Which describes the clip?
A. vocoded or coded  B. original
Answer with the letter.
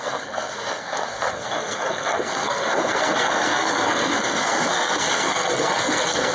A